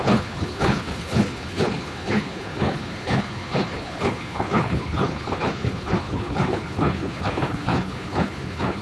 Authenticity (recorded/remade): remade